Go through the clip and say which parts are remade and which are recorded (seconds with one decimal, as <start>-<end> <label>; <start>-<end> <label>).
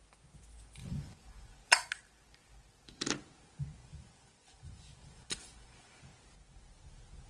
0.0-0.8 recorded; 0.8-1.6 remade; 1.6-3.8 recorded; 3.8-6.0 remade; 6.0-7.3 recorded